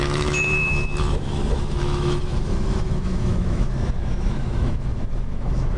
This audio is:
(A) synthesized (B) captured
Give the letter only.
A